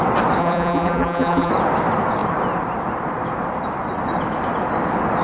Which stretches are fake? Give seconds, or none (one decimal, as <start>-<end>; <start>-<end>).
0.4-1.5